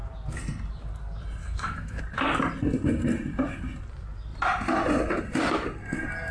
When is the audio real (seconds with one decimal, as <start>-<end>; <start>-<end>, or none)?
0.0-1.4; 2.0-6.3